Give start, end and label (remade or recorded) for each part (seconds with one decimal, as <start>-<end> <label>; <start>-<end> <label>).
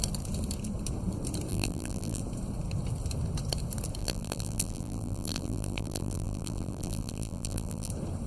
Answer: 0.0-1.5 recorded; 1.5-2.2 remade; 2.2-4.0 recorded; 4.0-7.9 remade; 7.9-8.3 recorded